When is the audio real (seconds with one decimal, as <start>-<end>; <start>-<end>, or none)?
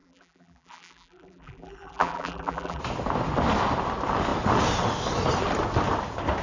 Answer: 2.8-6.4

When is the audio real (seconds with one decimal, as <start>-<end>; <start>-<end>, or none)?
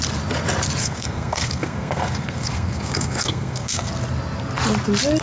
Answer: 0.0-0.8; 3.9-5.2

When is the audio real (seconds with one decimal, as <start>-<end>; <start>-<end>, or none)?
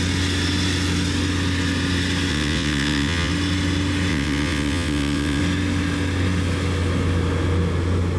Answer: 0.0-2.3; 3.3-4.1; 5.4-8.2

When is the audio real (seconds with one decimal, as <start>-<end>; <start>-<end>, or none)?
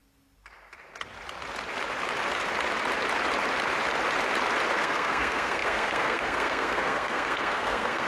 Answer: 0.0-4.7